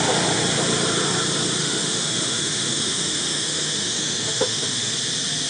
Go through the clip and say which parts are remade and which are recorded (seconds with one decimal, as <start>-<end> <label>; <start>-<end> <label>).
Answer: 0.0-1.6 recorded; 1.6-4.9 remade; 4.9-5.5 recorded